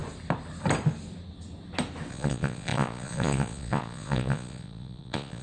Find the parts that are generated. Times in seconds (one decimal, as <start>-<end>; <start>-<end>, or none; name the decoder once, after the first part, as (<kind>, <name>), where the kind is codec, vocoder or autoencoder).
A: 2.1-5.4 (vocoder, Vocos)

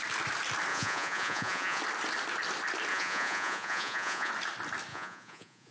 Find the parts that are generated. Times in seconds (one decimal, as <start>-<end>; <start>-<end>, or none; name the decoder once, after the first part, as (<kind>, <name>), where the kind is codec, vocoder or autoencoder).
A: 0.7-1.8 (vocoder, Vocos); 2.9-4.3; 4.9-5.7

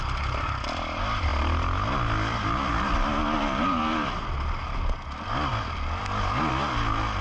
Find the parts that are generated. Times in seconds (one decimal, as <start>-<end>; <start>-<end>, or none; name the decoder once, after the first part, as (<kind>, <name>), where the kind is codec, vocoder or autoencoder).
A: none

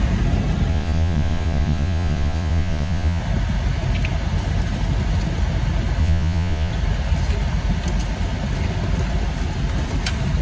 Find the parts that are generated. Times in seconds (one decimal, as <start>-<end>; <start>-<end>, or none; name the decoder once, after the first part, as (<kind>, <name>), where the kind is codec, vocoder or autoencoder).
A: 0.7-3.2 (vocoder, Vocos); 6.0-6.7

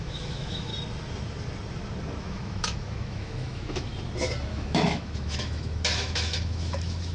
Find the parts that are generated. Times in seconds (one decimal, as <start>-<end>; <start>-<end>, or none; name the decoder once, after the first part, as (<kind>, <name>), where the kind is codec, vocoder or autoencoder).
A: 0.0-0.7 (autoencoder, DAC-VAE); 2.2-3.9; 4.5-7.1

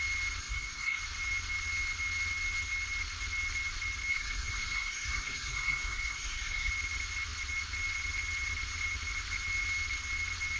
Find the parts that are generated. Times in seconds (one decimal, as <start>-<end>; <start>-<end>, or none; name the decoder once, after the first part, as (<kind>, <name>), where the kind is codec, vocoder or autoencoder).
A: 0.4-1.0 (codec, SNAC); 4.1-6.7

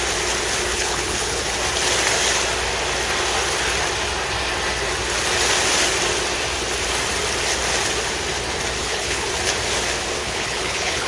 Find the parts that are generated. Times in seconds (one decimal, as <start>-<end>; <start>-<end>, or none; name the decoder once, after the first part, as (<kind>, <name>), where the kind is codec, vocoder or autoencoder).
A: 0.7-1.4 (codec, HILCodec); 8.8-9.3; 10.2-11.1

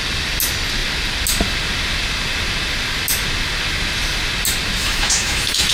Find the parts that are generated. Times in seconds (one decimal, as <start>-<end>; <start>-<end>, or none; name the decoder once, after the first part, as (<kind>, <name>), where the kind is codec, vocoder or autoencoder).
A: 4.8-5.7 (autoencoder, DAC-VAE)